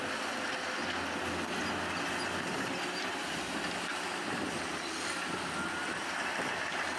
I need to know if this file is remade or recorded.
recorded